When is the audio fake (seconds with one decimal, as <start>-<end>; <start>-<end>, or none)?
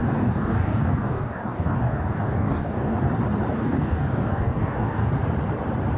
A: 0.0-3.0; 3.5-5.1